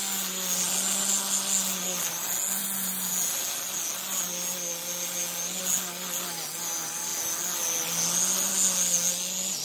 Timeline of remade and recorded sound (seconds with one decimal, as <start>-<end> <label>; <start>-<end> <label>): 0.0-9.6 recorded